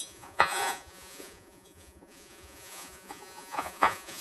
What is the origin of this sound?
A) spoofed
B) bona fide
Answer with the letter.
A